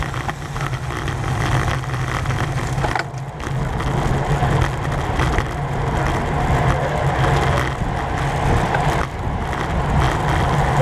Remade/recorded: recorded